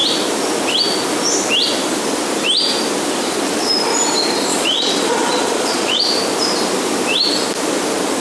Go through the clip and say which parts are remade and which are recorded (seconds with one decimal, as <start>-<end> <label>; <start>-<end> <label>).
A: 0.0-4.5 recorded; 4.5-6.0 remade; 6.0-8.2 recorded